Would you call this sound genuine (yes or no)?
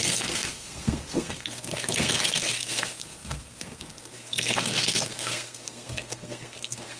no